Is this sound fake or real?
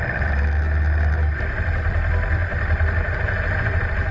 fake